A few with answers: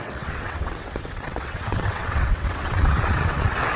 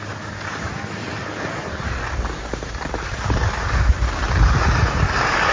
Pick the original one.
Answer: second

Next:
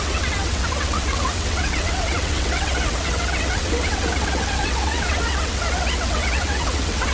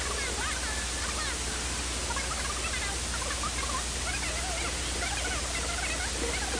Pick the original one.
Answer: second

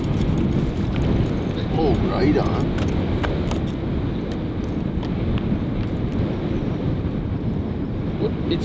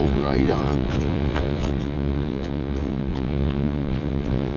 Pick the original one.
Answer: first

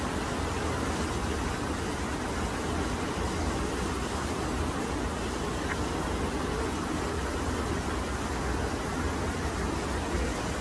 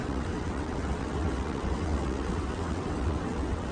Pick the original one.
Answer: first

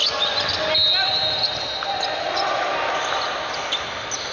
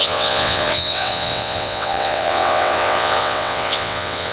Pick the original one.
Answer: first